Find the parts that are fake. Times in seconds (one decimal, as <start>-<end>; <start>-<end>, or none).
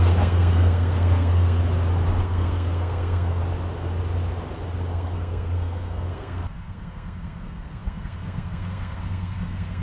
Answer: 0.0-1.6; 2.2-3.4; 4.9-9.8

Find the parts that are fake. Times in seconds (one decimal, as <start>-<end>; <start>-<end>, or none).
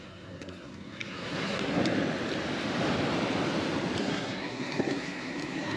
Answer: 0.0-1.8; 4.0-5.8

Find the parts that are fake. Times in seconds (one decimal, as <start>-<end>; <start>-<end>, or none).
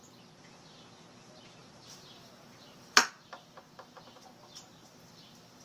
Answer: 1.6-3.1